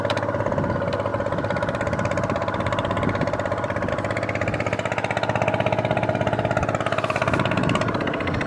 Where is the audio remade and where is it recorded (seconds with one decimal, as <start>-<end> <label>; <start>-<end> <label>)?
0.0-1.1 recorded; 1.1-3.9 remade; 3.9-8.5 recorded